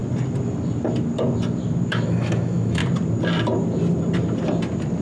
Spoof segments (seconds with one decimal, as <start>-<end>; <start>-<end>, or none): 1.9-2.8